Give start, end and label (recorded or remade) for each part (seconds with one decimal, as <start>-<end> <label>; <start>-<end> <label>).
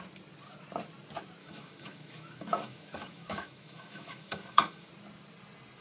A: 0.0-1.4 recorded; 1.4-4.9 remade; 4.9-5.8 recorded